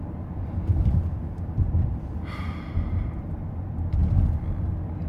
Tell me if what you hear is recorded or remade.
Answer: recorded